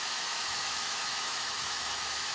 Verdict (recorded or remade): remade